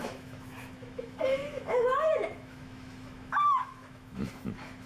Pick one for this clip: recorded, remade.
remade